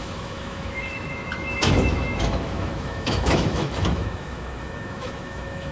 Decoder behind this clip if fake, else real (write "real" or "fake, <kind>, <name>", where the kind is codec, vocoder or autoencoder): fake, autoencoder, DAC-VAE